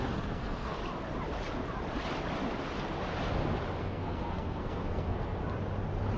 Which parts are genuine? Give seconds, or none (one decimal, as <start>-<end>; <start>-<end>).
0.8-3.8; 5.4-6.2